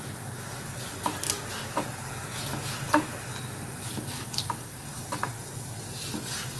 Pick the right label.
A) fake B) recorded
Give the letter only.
B